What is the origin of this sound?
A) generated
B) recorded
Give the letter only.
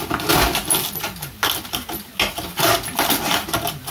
B